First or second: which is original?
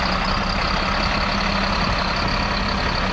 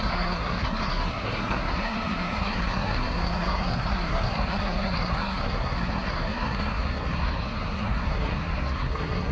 first